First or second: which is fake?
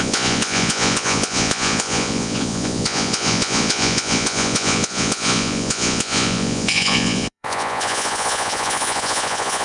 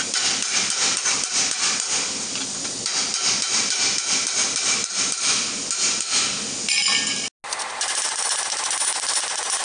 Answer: first